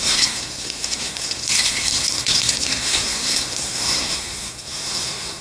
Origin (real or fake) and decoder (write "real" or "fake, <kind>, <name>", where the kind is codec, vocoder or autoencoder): fake, codec, SNAC